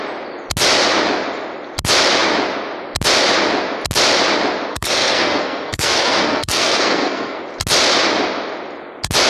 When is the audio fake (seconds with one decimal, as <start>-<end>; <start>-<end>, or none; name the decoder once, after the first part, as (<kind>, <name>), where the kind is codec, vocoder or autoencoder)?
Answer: 4.7-7.4 (codec, SNAC)